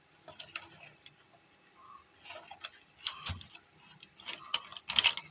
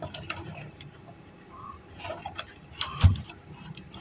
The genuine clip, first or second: first